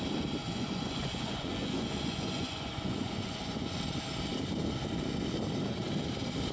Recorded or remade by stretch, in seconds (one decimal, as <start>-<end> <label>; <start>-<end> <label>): 0.0-0.4 recorded; 0.4-3.8 remade; 3.8-6.5 recorded